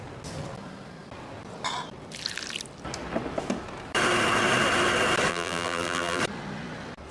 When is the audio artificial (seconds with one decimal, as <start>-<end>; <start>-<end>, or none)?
5.3-6.2